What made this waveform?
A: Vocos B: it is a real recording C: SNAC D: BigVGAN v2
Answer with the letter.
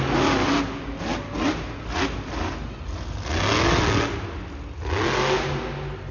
B